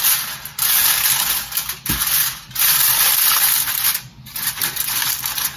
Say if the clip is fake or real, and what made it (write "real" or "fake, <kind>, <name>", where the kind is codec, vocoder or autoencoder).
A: fake, vocoder, BigVGAN v2